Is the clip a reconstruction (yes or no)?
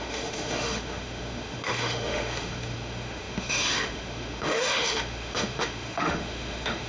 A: yes